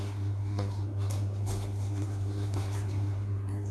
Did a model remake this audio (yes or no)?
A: yes